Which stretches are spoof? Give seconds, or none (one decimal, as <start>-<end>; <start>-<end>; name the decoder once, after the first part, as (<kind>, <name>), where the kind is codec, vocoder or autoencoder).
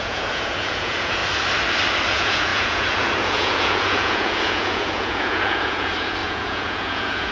0.0-1.2 (vocoder, Vocos); 2.1-7.3